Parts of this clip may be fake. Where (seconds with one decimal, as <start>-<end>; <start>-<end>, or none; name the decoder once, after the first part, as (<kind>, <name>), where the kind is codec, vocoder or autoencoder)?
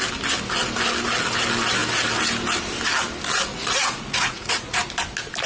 3.5-4.9 (vocoder, Vocos)